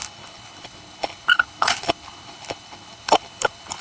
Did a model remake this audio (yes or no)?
yes